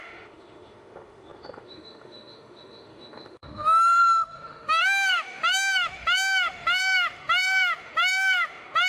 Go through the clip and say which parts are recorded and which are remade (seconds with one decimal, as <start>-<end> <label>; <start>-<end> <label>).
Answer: 0.0-8.9 remade